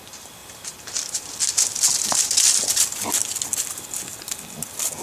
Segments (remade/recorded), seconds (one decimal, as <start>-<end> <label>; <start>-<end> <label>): 0.0-0.4 recorded; 0.4-1.3 remade; 1.3-5.0 recorded